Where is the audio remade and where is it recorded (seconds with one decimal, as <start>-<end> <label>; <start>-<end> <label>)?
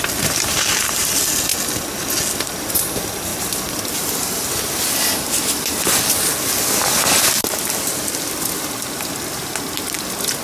0.0-10.4 recorded